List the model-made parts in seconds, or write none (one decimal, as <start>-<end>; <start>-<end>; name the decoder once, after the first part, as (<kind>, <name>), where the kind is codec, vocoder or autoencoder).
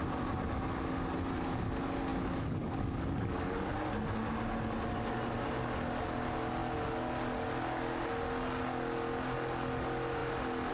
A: 2.1-3.7 (codec, DAC)